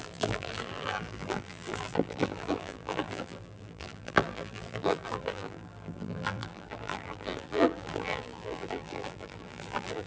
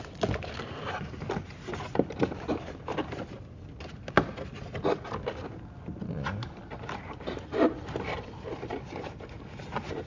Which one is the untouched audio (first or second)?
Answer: second